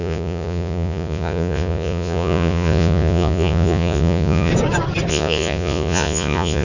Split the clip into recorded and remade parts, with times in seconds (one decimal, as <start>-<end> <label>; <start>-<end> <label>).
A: 0.0-4.5 remade; 4.5-5.1 recorded; 5.1-6.6 remade